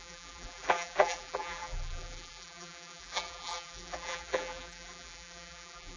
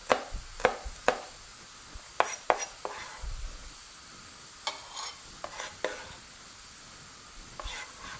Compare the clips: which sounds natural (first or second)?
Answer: second